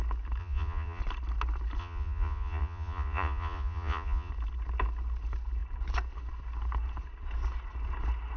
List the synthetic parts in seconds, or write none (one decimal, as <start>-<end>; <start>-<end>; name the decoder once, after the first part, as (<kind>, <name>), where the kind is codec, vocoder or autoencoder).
0.4-1.0 (vocoder, Vocos); 1.8-4.3